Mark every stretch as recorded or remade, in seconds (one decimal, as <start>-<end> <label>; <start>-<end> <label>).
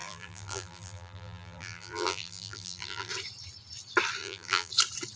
0.0-3.1 remade; 3.1-4.2 recorded; 4.2-4.7 remade; 4.7-5.2 recorded